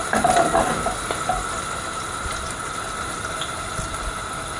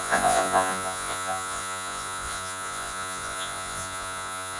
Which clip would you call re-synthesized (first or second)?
second